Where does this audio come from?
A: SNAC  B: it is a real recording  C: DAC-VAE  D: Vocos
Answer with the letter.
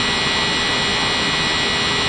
B